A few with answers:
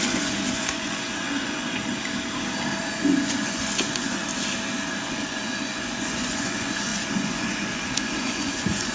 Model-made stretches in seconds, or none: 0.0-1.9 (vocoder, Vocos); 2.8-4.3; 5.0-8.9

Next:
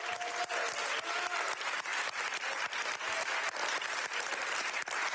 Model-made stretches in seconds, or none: none

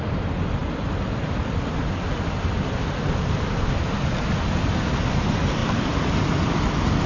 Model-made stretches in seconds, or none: none

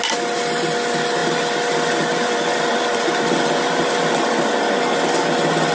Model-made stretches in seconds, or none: 1.2-4.6 (vocoder, BigVGAN v2)

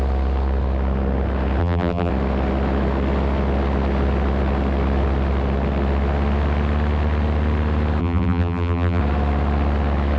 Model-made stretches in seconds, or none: 1.6-2.1 (vocoder, BigVGAN v2); 8.0-9.0